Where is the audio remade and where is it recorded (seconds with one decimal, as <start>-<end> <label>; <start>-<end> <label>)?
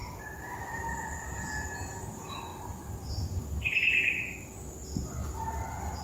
0.0-2.1 remade; 2.1-6.0 recorded